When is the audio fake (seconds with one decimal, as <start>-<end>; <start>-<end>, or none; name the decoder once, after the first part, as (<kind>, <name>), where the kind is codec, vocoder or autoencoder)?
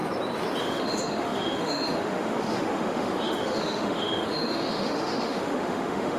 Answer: 0.6-6.2 (autoencoder, DAC-VAE)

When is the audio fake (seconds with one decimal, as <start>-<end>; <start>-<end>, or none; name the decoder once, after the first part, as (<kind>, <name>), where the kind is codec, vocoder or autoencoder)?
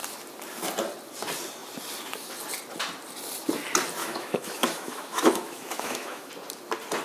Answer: 4.0-6.3 (autoencoder, DAC-VAE)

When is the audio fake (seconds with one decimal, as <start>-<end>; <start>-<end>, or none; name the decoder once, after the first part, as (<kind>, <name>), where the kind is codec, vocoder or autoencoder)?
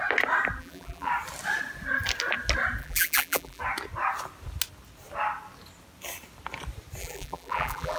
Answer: 0.6-1.1 (vocoder, BigVGAN v2); 2.8-3.6; 7.0-8.0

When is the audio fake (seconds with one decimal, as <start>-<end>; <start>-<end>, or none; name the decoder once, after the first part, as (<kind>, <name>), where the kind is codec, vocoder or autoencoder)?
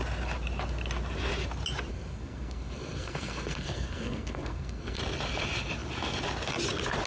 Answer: 1.9-5.0 (codec, SNAC)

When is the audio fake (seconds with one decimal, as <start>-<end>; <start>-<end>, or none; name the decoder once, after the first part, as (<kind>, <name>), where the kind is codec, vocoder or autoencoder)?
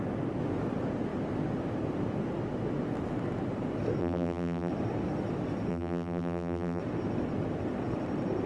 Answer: 4.0-4.7 (vocoder, BigVGAN v2); 5.7-6.8